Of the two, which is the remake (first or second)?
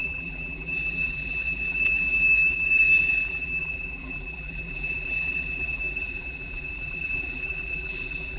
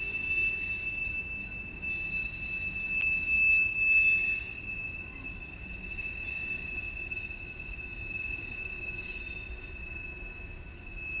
first